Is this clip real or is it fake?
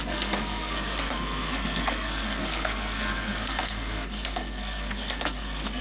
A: fake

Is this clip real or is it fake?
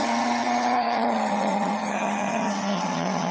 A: fake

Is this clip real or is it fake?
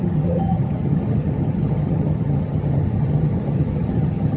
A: fake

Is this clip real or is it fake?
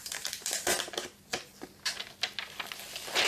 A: real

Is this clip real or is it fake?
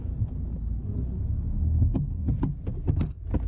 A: real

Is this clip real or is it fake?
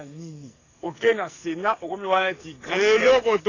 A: fake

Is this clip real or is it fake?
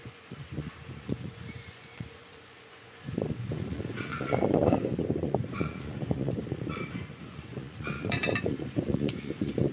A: fake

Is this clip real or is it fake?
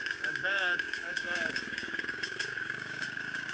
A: fake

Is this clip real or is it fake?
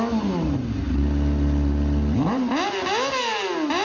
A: real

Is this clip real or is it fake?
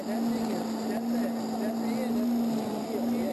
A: real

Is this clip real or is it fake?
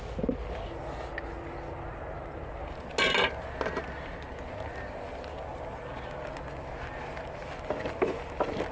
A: real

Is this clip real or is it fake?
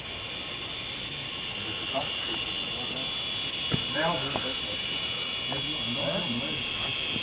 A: real